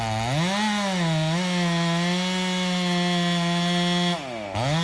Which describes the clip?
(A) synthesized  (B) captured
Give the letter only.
B